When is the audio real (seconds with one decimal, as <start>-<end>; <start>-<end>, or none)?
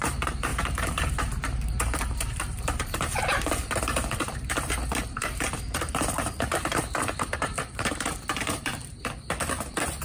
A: 8.7-10.0